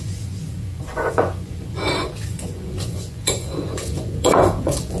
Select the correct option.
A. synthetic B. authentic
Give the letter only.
A